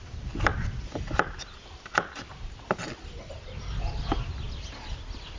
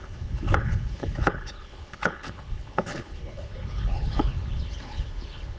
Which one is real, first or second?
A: first